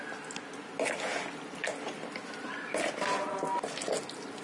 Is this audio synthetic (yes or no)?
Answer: no